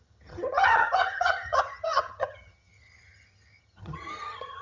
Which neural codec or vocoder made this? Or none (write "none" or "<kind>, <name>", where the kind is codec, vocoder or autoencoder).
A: vocoder, HiFi-GAN